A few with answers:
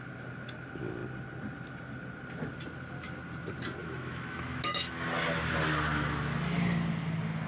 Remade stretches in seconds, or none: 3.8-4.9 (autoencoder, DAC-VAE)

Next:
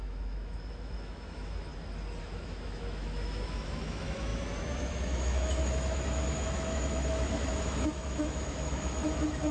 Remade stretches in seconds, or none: 0.0-1.7 (autoencoder, DAC-VAE); 2.2-9.5